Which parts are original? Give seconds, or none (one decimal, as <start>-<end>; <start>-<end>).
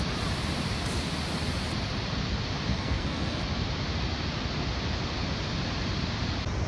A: 0.0-2.7; 3.4-6.7